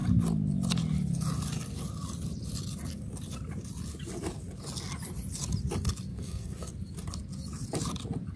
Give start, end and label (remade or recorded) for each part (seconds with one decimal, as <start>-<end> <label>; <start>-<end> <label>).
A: 0.0-6.1 recorded; 6.1-6.7 remade; 6.7-8.4 recorded